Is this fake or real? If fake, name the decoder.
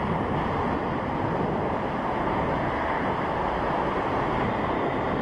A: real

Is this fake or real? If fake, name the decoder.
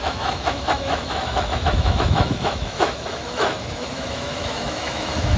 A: fake, autoencoder, DAC-VAE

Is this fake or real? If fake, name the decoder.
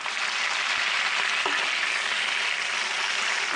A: real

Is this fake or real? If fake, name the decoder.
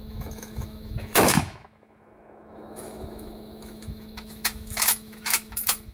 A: fake, autoencoder, DAC-VAE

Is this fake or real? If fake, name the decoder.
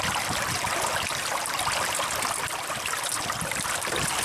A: real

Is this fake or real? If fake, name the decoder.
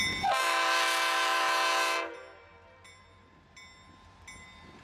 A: real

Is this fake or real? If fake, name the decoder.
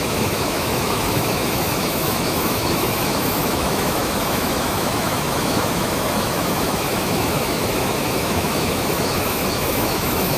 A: fake, autoencoder, DAC-VAE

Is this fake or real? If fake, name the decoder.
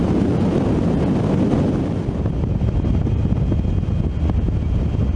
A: real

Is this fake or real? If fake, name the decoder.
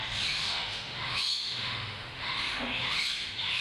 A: fake, autoencoder, DAC-VAE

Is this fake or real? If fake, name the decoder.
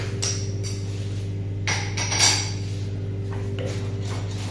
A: real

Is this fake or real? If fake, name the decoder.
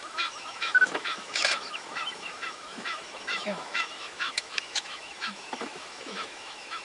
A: fake, autoencoder, DAC-VAE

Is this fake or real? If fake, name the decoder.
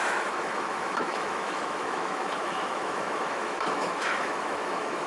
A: fake, autoencoder, DAC-VAE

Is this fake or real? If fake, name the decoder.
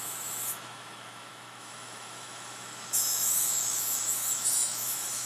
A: fake, autoencoder, DAC-VAE